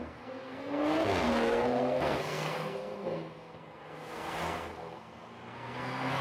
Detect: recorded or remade remade